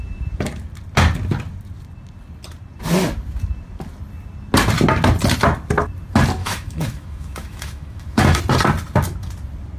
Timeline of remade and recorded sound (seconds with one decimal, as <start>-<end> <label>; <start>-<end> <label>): 0.0-6.4 recorded; 6.4-8.4 remade; 8.4-9.8 recorded